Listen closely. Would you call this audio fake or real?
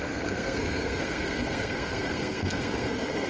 fake